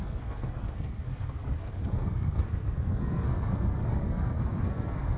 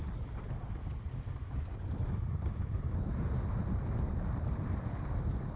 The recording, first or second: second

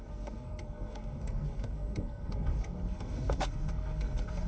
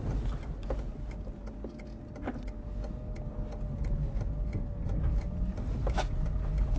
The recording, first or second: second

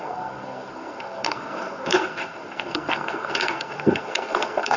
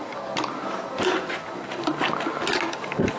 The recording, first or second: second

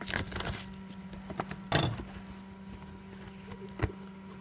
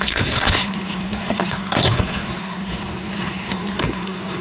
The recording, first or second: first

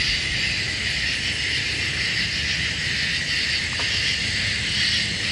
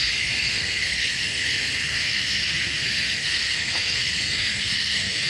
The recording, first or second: first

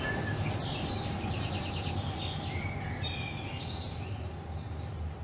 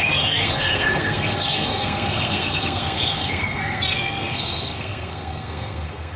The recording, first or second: first